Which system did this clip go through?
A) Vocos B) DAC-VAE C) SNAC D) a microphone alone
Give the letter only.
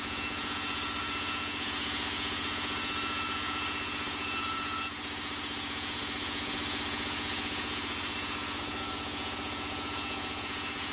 A